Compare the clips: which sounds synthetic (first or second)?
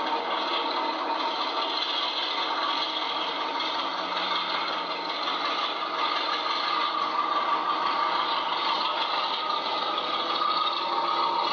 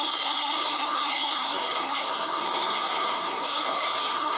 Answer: second